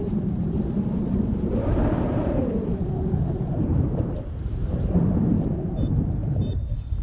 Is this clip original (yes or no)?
no